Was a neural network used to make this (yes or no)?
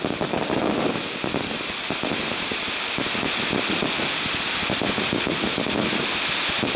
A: no